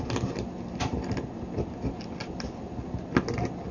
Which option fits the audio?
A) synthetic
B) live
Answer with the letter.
B